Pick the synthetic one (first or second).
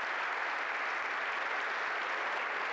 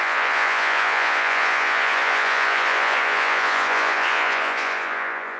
second